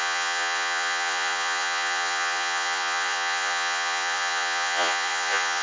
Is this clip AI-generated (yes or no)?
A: yes